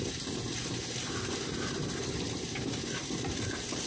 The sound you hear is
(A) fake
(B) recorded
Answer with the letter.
B